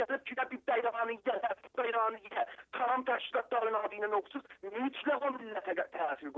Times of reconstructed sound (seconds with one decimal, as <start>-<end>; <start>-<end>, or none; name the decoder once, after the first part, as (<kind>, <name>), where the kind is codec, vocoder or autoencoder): none